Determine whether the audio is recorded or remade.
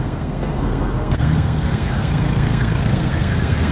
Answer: remade